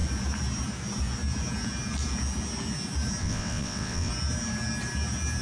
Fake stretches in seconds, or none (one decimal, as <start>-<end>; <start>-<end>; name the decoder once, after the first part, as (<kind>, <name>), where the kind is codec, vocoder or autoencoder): 3.2-4.1 (vocoder, WaveNeXt)